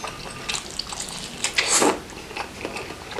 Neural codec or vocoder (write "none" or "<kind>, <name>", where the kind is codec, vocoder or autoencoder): none